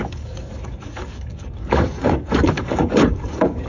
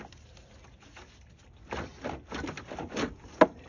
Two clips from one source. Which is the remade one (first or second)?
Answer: first